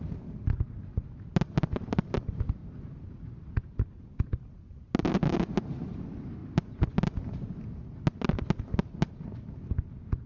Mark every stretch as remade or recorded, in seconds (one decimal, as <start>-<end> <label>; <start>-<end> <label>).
0.0-10.3 recorded